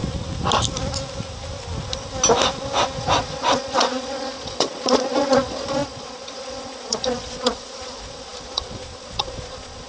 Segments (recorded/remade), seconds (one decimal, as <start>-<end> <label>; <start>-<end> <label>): 0.0-3.0 recorded; 3.0-9.9 remade